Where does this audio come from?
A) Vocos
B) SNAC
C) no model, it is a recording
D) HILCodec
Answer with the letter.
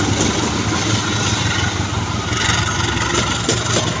C